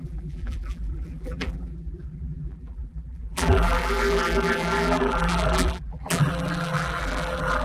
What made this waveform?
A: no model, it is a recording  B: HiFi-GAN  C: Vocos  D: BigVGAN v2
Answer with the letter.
D